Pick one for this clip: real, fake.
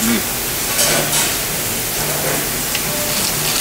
real